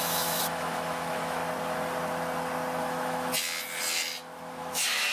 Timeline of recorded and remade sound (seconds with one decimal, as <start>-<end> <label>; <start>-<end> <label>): 0.0-1.4 remade; 1.4-2.8 recorded; 2.8-3.3 remade; 3.3-4.2 recorded; 4.2-5.1 remade